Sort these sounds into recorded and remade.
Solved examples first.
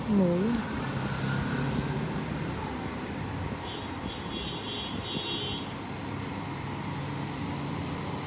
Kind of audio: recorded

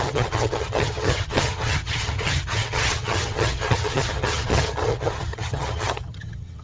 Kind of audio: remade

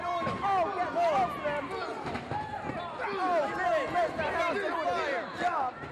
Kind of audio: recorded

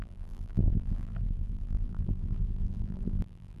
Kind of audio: remade